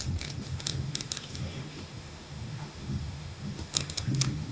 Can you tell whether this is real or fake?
fake